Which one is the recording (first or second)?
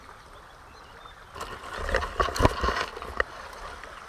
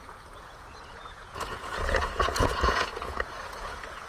first